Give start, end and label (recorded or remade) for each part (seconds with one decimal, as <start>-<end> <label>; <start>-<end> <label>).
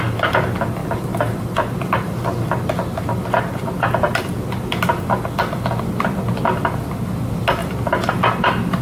0.0-8.8 recorded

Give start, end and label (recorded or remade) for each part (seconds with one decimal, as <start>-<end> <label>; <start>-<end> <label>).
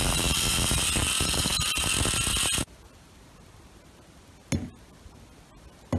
0.0-6.0 recorded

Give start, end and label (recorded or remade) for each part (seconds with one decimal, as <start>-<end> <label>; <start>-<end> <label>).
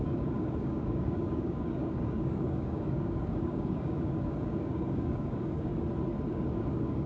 0.0-5.7 remade; 5.7-6.3 recorded; 6.3-7.1 remade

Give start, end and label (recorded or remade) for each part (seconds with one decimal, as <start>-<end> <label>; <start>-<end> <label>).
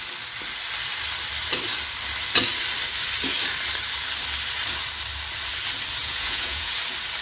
0.0-6.0 recorded; 6.0-6.7 remade; 6.7-7.2 recorded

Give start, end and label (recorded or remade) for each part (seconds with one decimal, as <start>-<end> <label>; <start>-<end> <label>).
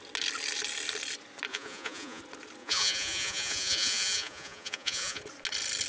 0.0-1.5 recorded; 1.5-2.2 remade; 2.2-2.6 recorded; 2.6-5.2 remade; 5.2-5.9 recorded